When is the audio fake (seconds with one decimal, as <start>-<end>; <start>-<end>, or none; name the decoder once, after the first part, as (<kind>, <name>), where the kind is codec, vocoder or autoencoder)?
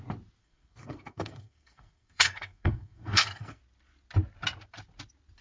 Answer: 0.4-3.6 (codec, SNAC)